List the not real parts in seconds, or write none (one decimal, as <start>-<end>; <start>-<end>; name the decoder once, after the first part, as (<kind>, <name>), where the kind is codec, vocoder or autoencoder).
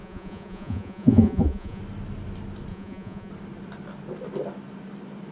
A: 0.0-1.8 (vocoder, Vocos); 2.7-3.3